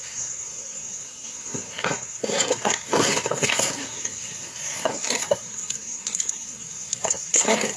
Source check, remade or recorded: remade